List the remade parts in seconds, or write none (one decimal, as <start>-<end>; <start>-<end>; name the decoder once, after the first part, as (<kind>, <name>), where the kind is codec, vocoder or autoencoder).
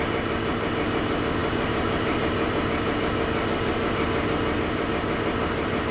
none